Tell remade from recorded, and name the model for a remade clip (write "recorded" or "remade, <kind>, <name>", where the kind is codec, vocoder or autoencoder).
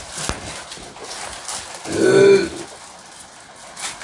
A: recorded